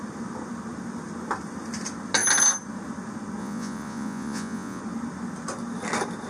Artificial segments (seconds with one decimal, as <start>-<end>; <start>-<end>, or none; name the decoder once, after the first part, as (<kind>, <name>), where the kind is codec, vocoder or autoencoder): 3.4-4.8 (vocoder, Vocos)

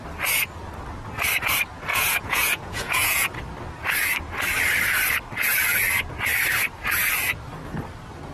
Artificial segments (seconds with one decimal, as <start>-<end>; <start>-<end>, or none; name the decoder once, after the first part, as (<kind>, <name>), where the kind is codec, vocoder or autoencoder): 1.9-3.3 (vocoder, Vocos)

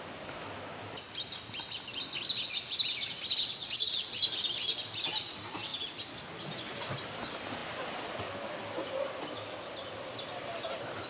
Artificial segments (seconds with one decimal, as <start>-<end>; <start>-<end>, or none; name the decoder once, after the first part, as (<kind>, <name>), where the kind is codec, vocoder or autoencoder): 3.6-4.2 (vocoder, Vocos)

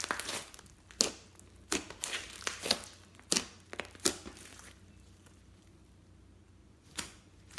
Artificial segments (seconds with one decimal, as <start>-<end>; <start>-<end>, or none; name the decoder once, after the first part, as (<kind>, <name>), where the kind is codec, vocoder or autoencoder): 6.6-7.6 (vocoder, Vocos)

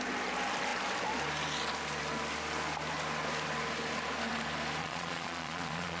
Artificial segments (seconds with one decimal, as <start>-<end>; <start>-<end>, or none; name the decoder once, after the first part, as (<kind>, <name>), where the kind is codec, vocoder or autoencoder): 4.8-6.0 (vocoder, Vocos)

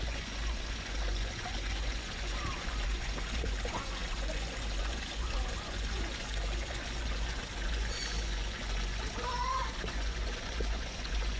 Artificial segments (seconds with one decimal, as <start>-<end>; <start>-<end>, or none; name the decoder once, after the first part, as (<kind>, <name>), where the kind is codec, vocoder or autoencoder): 0.0-11.4 (vocoder, Vocos)

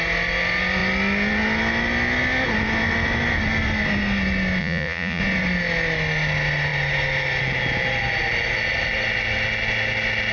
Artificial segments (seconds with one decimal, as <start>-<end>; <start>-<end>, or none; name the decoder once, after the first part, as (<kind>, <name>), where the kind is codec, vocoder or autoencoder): 4.6-5.2 (vocoder, Vocos)

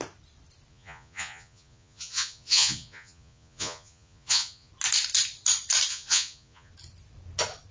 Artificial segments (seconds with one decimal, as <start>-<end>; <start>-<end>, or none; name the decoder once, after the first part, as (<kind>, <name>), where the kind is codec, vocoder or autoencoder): 0.7-4.7 (vocoder, Vocos); 5.9-6.7